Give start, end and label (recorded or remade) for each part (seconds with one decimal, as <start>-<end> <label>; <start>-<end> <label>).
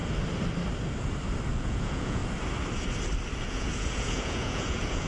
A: 0.0-1.6 recorded; 1.6-2.2 remade; 2.2-3.5 recorded; 3.5-5.1 remade